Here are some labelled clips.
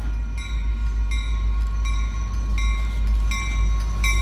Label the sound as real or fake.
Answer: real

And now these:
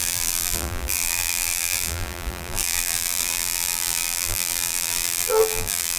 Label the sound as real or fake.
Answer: fake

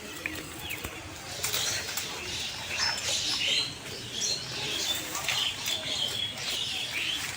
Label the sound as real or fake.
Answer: real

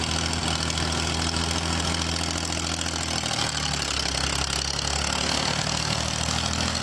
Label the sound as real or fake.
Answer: real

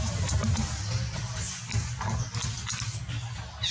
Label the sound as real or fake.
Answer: real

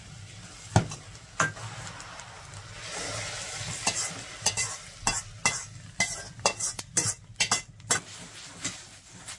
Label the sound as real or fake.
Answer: real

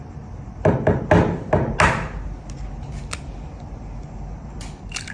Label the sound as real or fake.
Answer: real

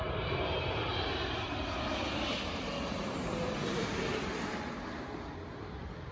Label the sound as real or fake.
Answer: fake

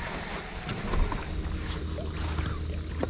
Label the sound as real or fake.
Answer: real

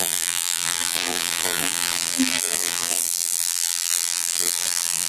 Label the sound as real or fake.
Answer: fake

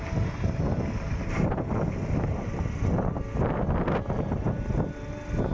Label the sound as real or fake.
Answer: real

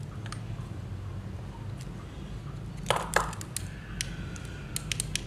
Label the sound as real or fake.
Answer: real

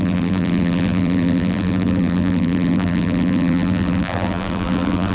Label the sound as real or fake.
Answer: fake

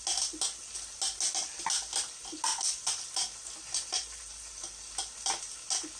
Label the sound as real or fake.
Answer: real